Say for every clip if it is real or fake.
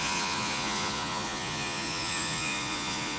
fake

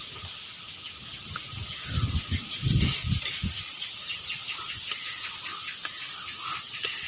real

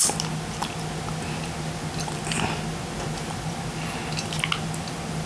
real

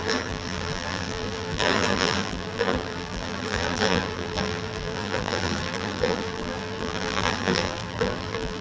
fake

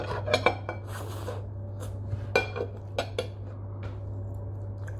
real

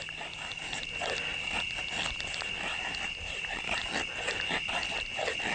real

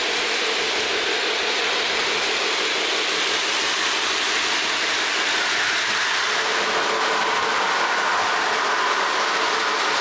real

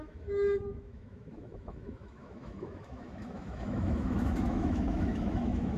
fake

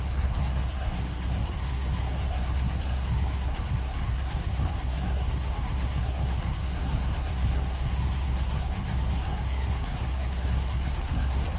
fake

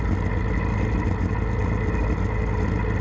real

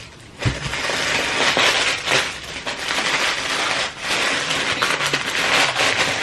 real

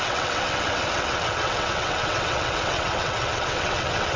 fake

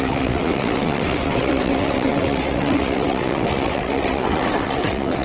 fake